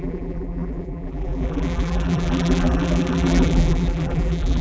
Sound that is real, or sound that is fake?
fake